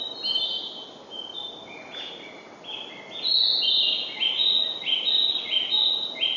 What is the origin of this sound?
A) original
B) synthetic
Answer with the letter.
A